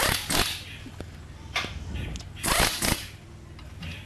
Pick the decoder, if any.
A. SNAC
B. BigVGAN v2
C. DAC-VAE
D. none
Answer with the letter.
D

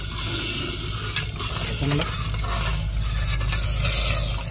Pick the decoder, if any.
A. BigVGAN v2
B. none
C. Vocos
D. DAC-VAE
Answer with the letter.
B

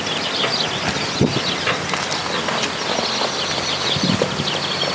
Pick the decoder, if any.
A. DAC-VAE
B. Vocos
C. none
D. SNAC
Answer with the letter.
C